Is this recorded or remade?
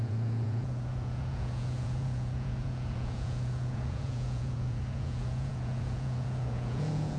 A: remade